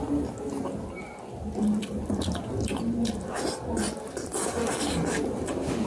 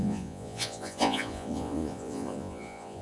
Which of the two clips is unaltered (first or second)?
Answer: first